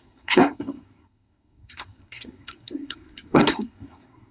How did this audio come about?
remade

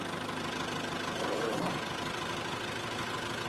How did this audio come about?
recorded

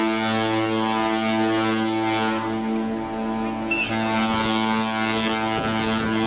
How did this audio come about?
recorded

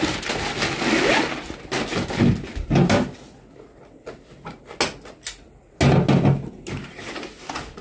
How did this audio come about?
recorded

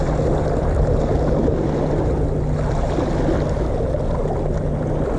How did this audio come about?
recorded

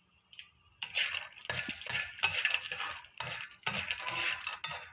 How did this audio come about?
recorded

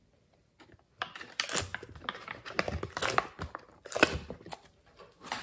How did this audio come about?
recorded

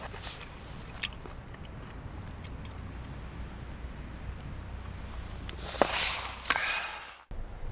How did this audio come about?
recorded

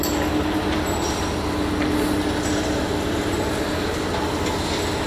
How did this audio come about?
recorded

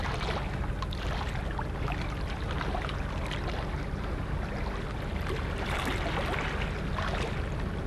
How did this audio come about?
recorded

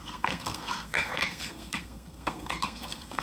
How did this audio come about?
remade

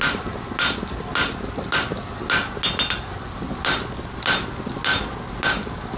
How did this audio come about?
recorded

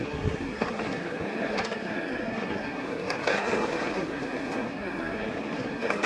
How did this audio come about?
remade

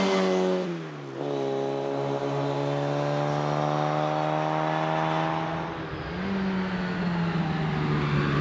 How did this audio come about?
recorded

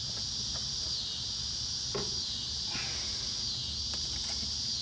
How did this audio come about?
recorded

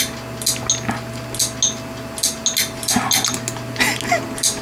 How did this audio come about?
recorded